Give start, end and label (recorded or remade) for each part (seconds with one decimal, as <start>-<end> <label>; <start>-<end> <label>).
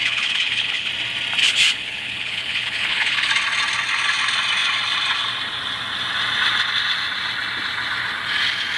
0.0-0.9 remade; 0.9-1.4 recorded; 1.4-3.3 remade; 3.3-8.8 recorded